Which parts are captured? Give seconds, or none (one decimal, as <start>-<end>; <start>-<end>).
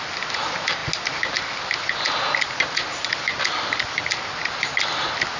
0.0-5.4